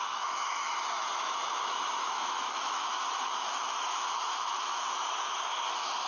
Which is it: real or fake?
fake